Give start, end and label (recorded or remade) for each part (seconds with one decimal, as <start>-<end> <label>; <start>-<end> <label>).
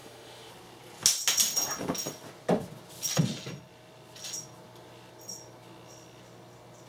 0.0-0.5 remade; 0.5-6.9 recorded